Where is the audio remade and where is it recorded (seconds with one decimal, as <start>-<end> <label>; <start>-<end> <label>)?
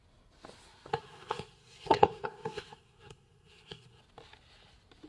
0.0-0.9 recorded; 0.9-4.0 remade; 4.0-5.1 recorded